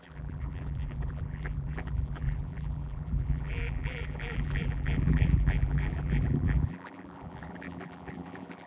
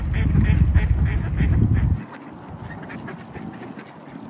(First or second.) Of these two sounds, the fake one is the first